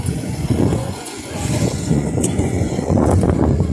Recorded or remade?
remade